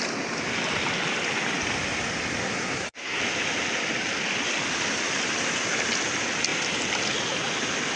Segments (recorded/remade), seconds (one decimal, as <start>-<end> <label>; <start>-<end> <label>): 0.0-2.4 recorded; 2.4-3.2 remade; 3.2-8.0 recorded